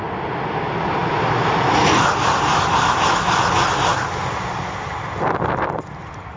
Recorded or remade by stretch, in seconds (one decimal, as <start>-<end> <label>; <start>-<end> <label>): 0.0-6.4 recorded